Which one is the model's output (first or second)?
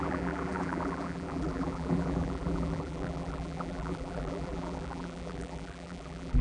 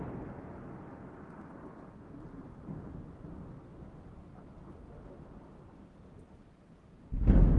first